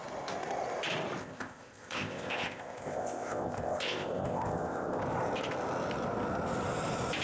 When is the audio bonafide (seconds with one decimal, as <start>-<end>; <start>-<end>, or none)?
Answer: 0.0-1.2; 5.0-7.2